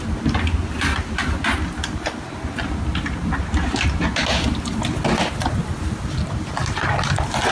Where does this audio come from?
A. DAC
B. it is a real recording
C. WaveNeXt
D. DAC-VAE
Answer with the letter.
B